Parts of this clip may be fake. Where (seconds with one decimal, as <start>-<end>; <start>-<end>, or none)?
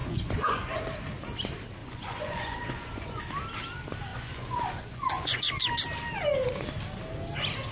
0.0-0.8; 1.8-3.2; 4.1-5.4